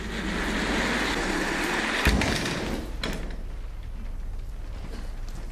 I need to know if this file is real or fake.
real